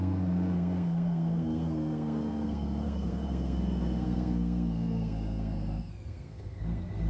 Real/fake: fake